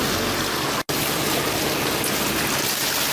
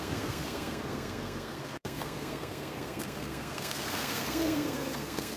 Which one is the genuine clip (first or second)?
first